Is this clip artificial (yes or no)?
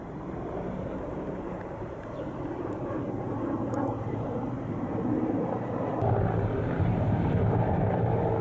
yes